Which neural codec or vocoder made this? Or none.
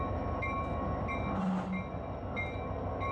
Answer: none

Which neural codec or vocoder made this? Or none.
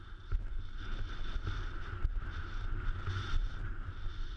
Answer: none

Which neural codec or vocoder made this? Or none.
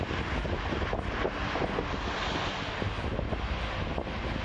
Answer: none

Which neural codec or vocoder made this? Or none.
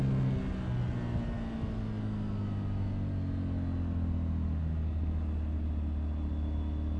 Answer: none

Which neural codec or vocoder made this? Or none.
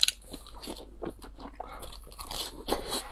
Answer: none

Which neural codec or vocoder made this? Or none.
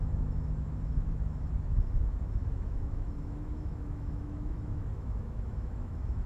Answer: autoencoder, DAC-VAE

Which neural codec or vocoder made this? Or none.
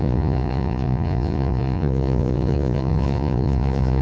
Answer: vocoder, Vocos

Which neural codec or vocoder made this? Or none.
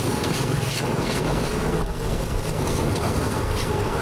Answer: codec, SNAC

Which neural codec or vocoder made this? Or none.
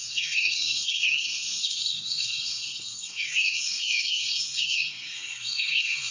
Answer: codec, SNAC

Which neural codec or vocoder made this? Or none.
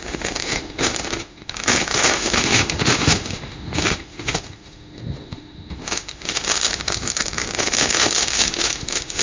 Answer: autoencoder, DAC-VAE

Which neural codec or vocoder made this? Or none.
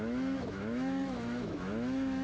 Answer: autoencoder, DAC-VAE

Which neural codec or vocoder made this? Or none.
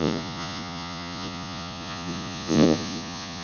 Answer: vocoder, Vocos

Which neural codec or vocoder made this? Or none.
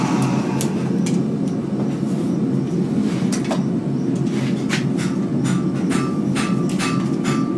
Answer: none